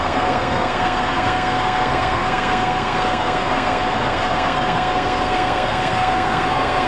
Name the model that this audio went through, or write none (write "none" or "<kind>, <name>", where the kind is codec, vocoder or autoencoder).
codec, SNAC